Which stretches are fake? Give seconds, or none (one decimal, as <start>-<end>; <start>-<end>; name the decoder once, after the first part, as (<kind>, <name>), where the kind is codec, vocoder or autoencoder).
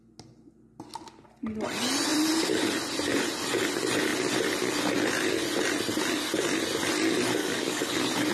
7.4-7.9 (codec, DAC)